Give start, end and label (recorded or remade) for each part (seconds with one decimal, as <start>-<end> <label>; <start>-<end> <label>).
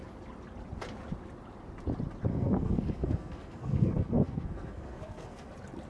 0.0-2.3 recorded; 2.3-5.5 remade; 5.5-5.9 recorded